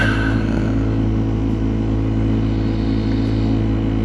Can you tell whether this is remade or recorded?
recorded